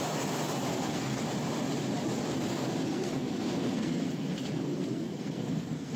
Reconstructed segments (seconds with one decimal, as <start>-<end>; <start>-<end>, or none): 0.7-1.2; 2.5-6.0